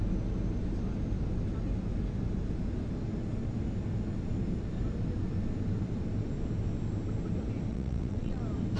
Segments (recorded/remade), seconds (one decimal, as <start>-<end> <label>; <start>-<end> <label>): 0.0-7.7 recorded; 7.7-8.4 remade; 8.4-8.8 recorded